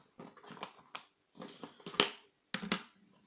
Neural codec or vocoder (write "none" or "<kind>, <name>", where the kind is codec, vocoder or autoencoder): none